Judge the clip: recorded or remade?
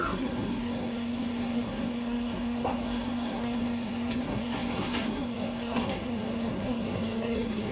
remade